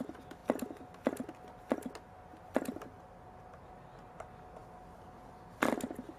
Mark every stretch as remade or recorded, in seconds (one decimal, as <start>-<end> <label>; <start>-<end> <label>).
0.0-6.2 recorded